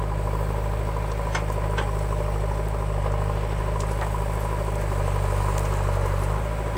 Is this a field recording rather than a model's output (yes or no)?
yes